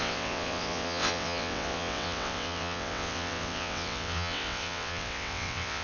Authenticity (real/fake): fake